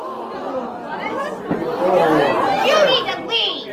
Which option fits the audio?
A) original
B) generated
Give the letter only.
A